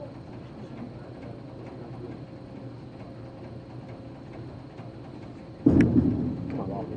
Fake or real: real